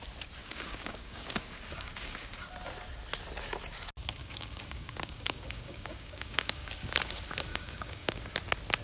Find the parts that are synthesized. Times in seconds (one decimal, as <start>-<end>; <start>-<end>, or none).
0.4-2.3; 4.2-6.7; 7.5-8.3